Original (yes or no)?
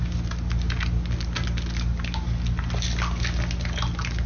yes